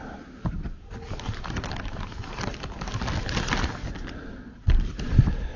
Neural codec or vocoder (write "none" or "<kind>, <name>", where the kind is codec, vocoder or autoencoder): none